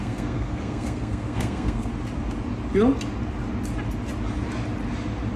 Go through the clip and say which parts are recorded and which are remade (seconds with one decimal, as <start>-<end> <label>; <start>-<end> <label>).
0.0-1.9 remade; 1.9-5.4 recorded